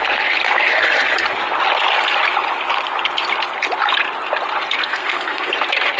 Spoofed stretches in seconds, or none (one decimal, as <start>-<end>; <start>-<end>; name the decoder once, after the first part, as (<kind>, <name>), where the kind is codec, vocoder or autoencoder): 4.8-5.5 (codec, SNAC)